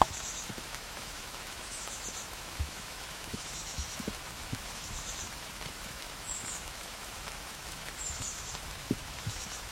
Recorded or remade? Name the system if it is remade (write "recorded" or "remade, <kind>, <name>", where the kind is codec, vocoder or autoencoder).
remade, autoencoder, DAC-VAE